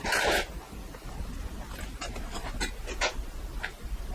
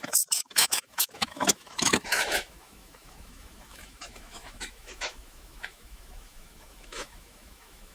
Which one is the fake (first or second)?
second